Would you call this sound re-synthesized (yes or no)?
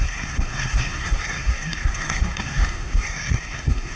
yes